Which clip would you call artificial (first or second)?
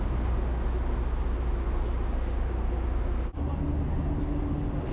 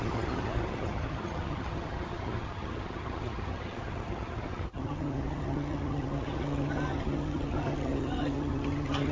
second